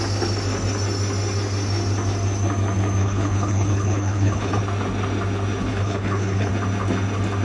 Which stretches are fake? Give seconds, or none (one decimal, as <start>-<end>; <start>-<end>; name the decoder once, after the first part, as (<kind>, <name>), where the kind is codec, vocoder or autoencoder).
3.0-4.6 (codec, HILCodec); 5.7-6.5